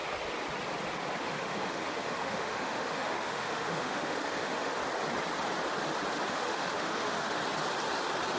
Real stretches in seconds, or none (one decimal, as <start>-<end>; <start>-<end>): 0.0-1.2; 4.8-6.3; 7.4-8.4